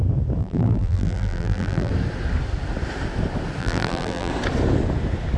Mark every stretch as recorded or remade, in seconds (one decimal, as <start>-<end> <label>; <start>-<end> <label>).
0.0-0.4 recorded; 0.4-1.9 remade; 1.9-3.6 recorded; 3.6-4.3 remade; 4.3-5.4 recorded

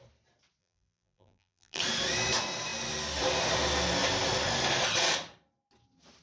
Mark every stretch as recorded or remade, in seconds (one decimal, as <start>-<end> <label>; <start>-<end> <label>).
0.0-0.6 recorded; 0.6-1.8 remade; 1.8-6.2 recorded

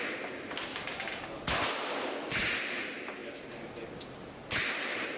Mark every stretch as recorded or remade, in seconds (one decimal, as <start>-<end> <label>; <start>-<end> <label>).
0.0-5.2 recorded

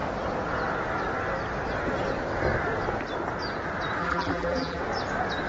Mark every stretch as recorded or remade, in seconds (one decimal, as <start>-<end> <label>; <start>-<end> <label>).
0.0-4.0 recorded; 4.0-4.8 remade; 4.8-5.5 recorded